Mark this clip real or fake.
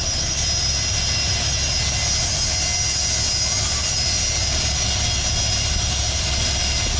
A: real